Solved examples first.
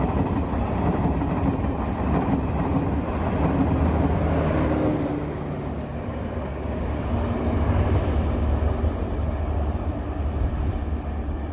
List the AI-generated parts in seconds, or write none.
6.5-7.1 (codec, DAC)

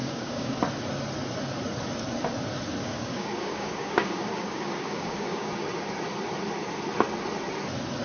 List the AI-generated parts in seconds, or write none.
0.0-0.6 (codec, DAC); 2.8-5.5

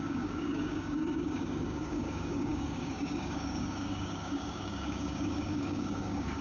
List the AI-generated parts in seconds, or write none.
0.0-6.4 (codec, DAC)